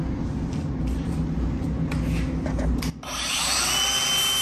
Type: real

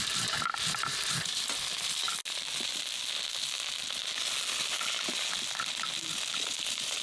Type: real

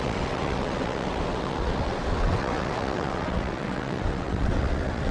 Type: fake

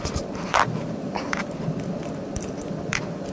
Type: fake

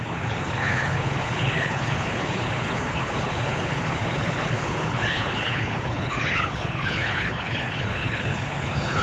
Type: fake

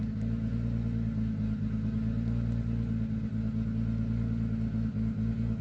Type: real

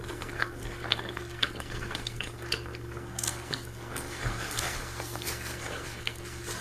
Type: fake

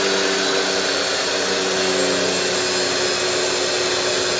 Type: real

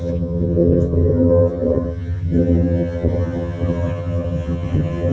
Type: fake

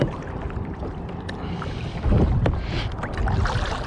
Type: real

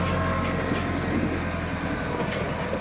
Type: real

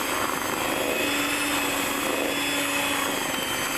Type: real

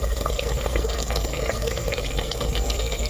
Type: fake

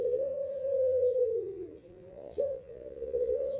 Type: fake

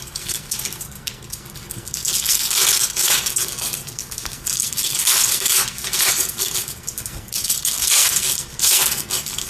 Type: fake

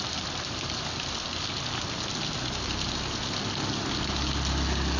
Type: real